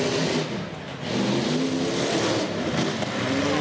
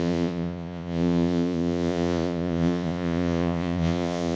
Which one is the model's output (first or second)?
second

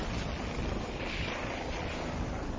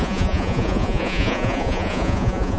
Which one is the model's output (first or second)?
second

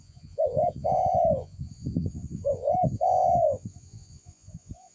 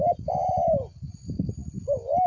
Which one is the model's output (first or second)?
first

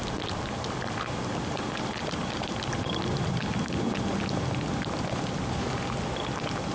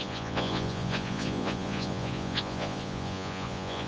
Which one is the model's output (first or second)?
second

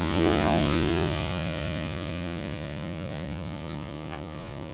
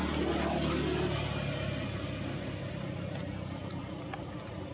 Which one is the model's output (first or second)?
first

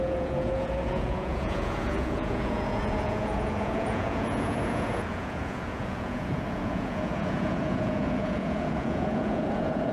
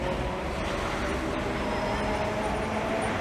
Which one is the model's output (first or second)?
first